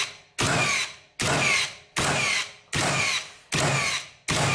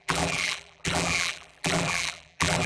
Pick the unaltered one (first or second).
first